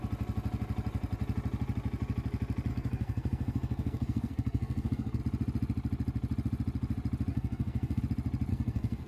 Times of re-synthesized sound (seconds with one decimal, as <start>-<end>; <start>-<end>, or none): 2.7-5.2; 7.3-8.0; 8.5-9.1